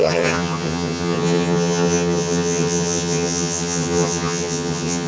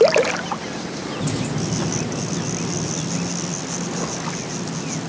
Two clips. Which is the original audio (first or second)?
second